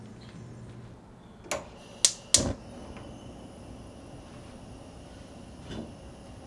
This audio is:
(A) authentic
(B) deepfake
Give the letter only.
A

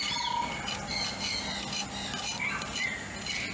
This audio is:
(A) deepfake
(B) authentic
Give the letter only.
B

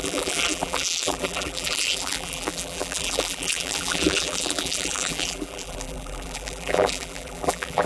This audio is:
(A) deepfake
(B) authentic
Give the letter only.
A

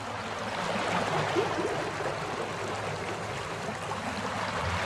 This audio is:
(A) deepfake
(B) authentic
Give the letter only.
B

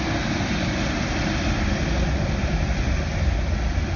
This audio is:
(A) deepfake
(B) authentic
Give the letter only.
B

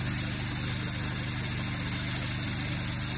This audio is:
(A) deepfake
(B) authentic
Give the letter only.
B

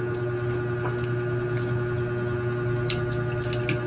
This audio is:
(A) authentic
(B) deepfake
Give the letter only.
A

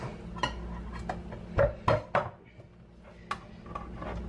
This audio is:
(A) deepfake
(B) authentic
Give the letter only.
B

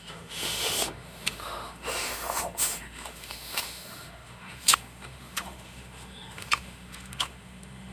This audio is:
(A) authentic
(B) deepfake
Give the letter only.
B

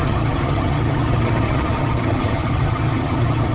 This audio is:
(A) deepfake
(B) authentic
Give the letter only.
A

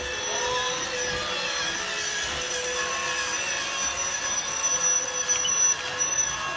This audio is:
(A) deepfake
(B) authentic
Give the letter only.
B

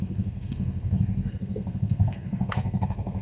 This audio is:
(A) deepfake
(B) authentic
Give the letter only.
A